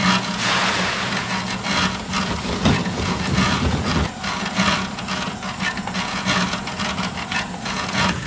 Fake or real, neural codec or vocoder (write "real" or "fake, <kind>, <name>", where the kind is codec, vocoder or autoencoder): fake, vocoder, Vocos